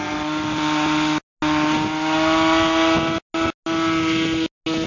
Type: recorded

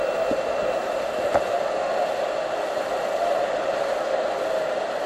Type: recorded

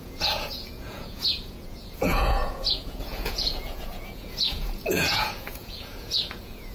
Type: remade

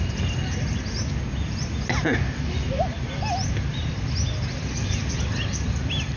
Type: recorded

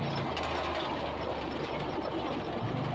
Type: recorded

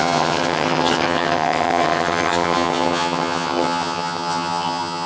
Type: remade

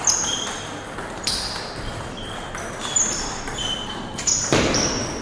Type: remade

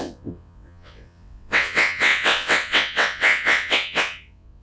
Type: remade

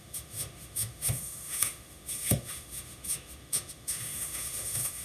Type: remade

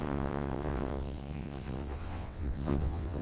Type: remade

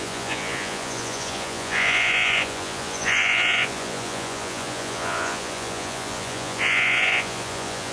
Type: remade